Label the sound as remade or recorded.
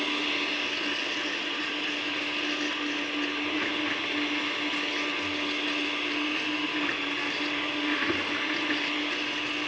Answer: recorded